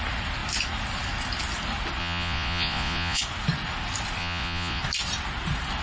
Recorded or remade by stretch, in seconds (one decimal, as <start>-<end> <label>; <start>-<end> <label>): 0.0-2.0 recorded; 2.0-3.2 remade; 3.2-4.2 recorded; 4.2-4.8 remade; 4.8-5.8 recorded